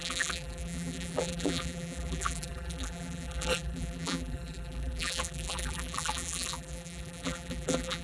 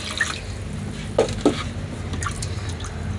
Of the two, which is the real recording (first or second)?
second